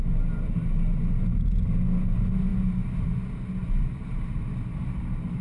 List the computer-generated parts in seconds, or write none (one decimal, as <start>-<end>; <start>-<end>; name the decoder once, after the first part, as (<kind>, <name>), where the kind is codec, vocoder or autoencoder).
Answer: 3.6-5.4 (vocoder, BigVGAN v2)